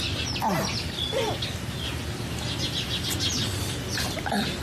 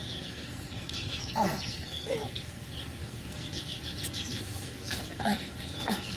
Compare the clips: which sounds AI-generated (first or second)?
second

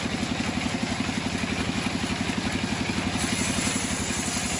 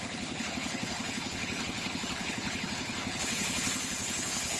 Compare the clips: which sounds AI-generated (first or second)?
second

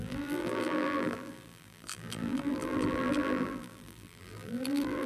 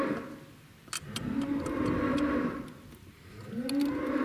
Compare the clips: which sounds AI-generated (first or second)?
first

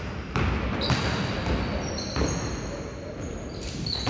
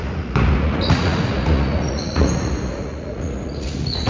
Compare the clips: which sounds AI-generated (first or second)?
second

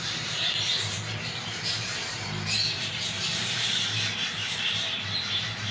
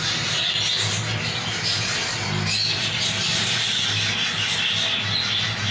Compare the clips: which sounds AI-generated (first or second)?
first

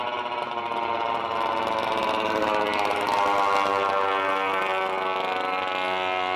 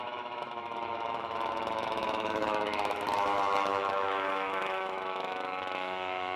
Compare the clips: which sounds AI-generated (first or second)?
second